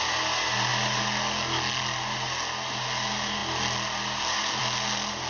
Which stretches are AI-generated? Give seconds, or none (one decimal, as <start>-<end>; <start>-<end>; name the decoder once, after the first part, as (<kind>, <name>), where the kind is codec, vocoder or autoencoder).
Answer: none